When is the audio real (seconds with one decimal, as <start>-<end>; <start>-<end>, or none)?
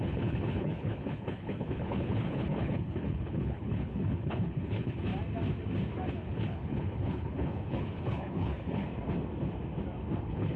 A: 5.1-6.1; 8.9-10.2